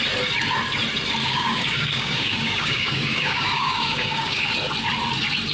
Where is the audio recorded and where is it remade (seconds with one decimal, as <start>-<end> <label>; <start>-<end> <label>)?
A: 0.0-1.2 recorded; 1.2-4.5 remade; 4.5-5.5 recorded